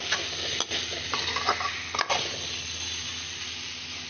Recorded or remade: recorded